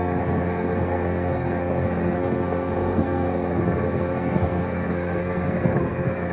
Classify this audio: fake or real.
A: fake